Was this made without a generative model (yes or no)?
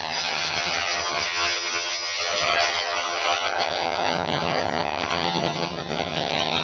no